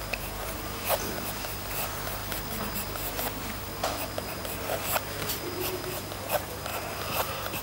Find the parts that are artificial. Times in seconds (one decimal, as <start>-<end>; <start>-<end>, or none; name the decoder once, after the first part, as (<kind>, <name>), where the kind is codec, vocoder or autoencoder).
none